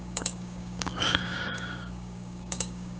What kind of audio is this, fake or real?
fake